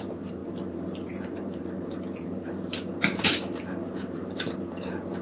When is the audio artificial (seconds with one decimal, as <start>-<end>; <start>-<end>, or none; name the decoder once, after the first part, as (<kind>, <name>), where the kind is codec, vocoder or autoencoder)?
0.0-5.2 (vocoder, BigVGAN v2)